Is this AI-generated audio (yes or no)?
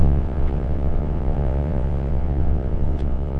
yes